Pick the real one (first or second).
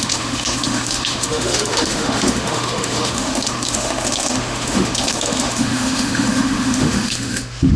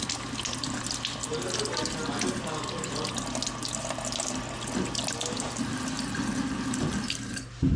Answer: second